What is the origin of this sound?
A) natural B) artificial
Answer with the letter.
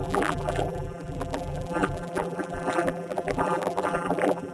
B